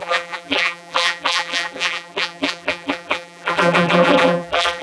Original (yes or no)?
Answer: no